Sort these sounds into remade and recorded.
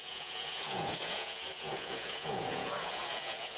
remade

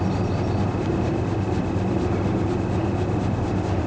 recorded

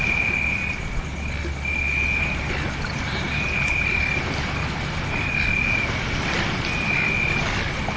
recorded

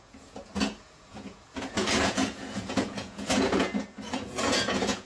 remade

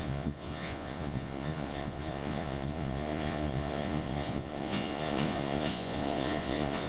remade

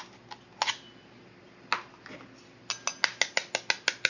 recorded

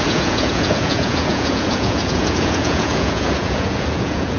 remade